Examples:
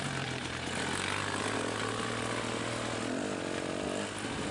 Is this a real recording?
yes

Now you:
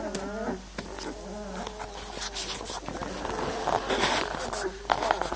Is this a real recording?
yes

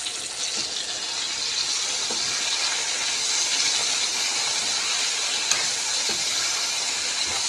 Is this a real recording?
yes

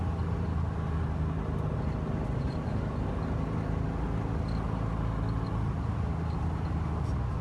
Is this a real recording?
yes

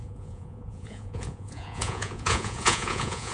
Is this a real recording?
no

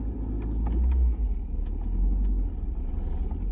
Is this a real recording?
yes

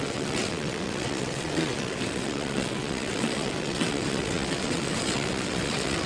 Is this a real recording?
no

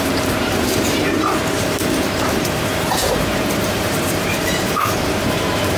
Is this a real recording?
no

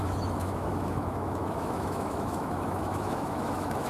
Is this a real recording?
no